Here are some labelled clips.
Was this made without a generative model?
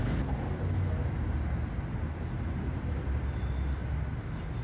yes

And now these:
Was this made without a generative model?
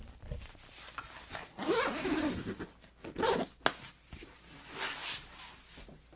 yes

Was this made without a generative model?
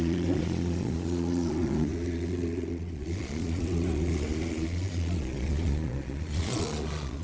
no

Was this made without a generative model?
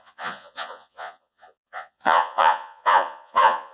no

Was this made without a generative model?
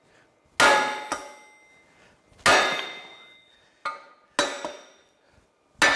yes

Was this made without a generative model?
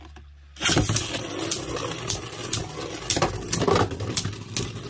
yes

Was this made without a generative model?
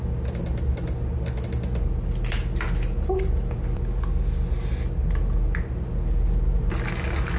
yes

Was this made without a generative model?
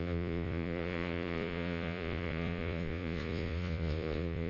no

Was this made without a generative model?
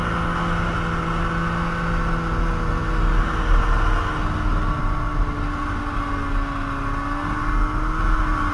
yes